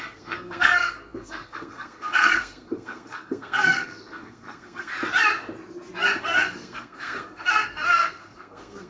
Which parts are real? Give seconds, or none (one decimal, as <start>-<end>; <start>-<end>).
4.9-6.2

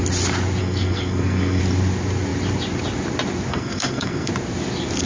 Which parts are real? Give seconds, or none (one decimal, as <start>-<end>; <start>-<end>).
0.0-0.6; 1.6-3.5; 4.3-5.1

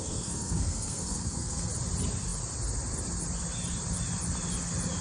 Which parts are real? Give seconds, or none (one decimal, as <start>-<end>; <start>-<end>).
1.7-5.0

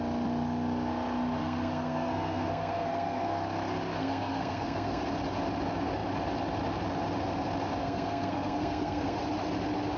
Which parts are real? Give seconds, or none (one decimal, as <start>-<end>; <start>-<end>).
0.0-1.4; 3.4-4.0; 5.0-7.8; 9.2-10.0

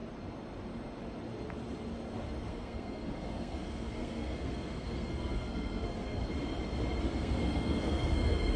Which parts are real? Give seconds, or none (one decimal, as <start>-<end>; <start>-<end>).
0.0-2.5; 6.2-7.0

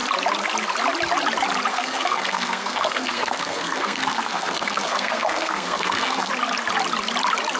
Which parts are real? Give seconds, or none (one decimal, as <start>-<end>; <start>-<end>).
0.0-1.7; 6.3-7.6

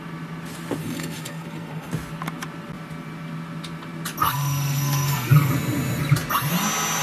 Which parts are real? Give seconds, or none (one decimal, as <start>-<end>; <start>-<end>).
0.0-0.8; 1.9-4.2; 5.5-7.0